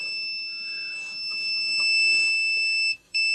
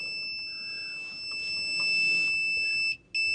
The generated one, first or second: first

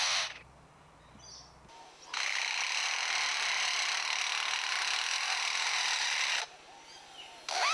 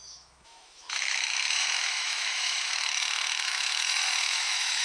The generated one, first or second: second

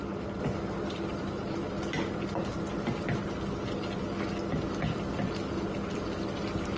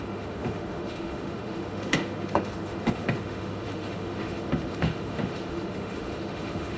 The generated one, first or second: second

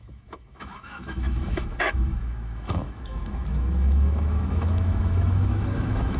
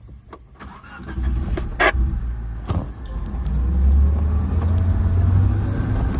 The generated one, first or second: first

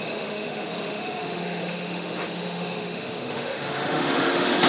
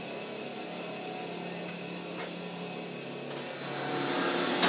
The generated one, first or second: first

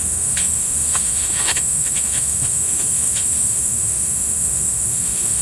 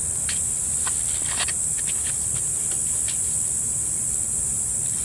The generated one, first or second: first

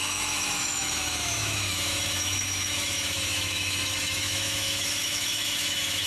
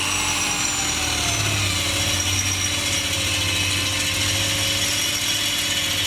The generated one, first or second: first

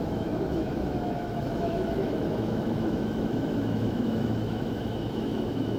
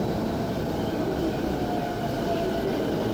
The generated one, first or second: first